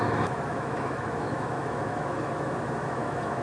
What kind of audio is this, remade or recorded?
remade